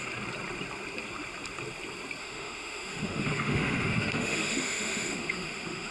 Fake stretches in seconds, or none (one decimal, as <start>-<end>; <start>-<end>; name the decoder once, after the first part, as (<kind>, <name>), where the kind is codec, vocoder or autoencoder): 2.2-5.9 (autoencoder, DAC-VAE)